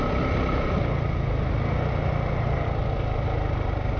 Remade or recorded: recorded